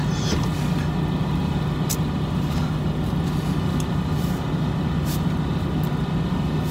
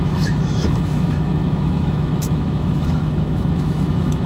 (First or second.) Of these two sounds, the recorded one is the first